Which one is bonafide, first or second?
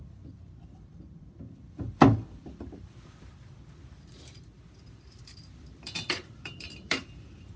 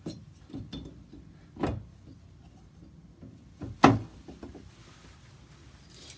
second